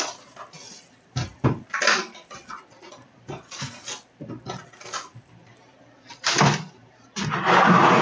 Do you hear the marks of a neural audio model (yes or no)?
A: yes